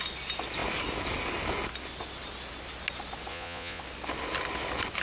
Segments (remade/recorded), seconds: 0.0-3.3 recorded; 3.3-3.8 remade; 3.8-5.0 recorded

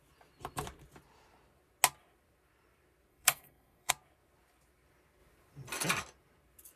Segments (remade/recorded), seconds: 0.0-3.1 recorded; 3.1-3.9 remade; 3.9-6.8 recorded

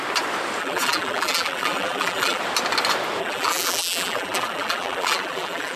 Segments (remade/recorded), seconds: 0.0-0.6 recorded; 0.6-2.4 remade; 2.4-3.2 recorded; 3.2-5.8 remade

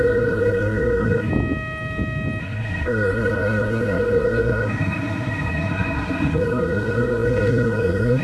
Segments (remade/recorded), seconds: 0.0-1.3 remade; 1.3-2.4 recorded; 2.4-8.2 remade

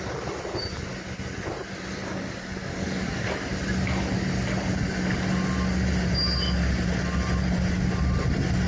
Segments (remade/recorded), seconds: 0.0-2.1 recorded; 2.1-3.3 remade; 3.3-8.7 recorded

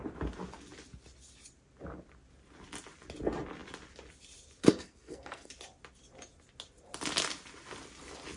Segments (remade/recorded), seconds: 0.0-4.6 recorded; 4.6-5.5 remade; 5.5-8.4 recorded

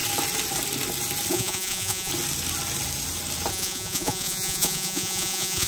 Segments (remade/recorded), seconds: 0.0-1.3 recorded; 1.3-2.1 remade; 2.1-3.5 recorded; 3.5-5.7 remade